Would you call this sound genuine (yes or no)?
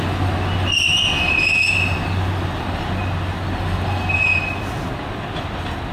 yes